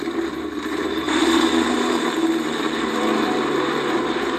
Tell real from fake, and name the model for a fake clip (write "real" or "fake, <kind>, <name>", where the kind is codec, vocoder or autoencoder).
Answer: fake, vocoder, BigVGAN v2